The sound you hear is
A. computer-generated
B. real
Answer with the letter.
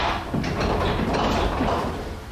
B